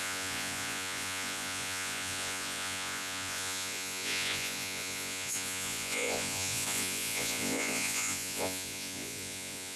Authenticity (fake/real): fake